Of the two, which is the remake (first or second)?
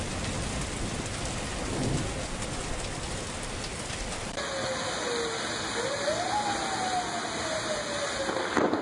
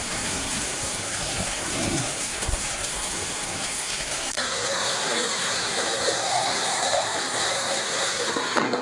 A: second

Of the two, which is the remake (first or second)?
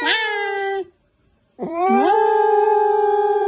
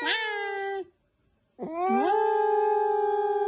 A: first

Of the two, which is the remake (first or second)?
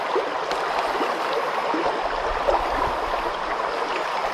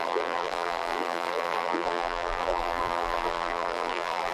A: second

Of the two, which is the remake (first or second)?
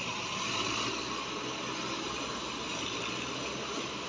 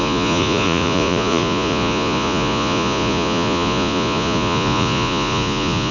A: second